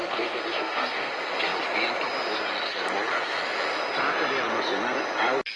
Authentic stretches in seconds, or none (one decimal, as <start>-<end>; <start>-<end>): 1.1-5.6